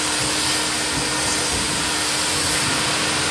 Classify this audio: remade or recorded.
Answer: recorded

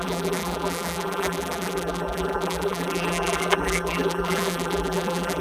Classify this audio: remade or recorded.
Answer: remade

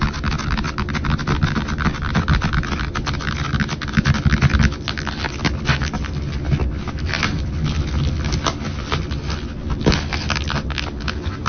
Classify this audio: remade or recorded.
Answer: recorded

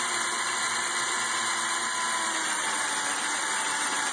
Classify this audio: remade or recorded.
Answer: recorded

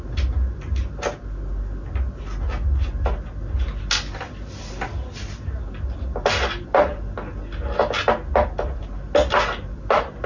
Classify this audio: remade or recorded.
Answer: recorded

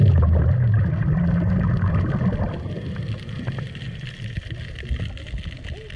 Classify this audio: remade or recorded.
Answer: recorded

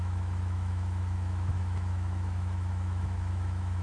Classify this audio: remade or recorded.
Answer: remade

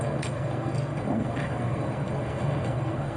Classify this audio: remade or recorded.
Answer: remade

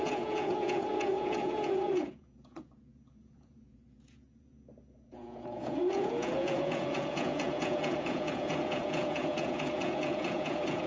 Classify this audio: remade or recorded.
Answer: remade